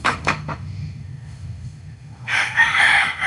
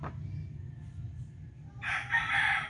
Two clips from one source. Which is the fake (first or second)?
first